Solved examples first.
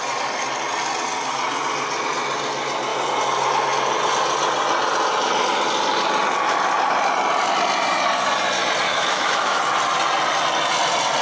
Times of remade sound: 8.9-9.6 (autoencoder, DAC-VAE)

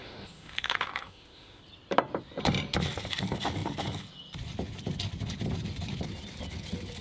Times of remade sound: 0.0-1.6 (autoencoder, DAC-VAE)

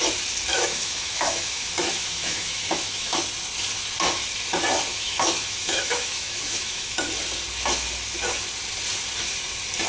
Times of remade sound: 0.5-3.2 (autoencoder, DAC-VAE); 4.9-7.0

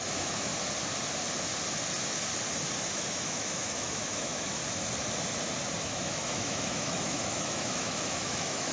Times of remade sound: 0.0-0.5 (autoencoder, DAC-VAE); 2.9-4.6; 5.8-8.7

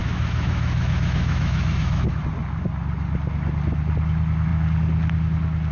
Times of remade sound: 0.0-2.2 (autoencoder, DAC-VAE)

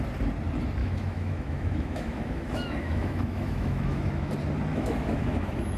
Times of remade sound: 0.8-4.3 (autoencoder, DAC-VAE); 4.7-5.8

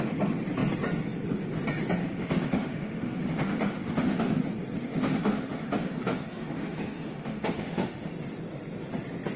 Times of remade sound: 2.0-4.4 (autoencoder, DAC-VAE); 4.9-8.1